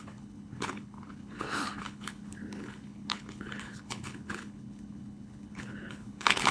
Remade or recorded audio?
remade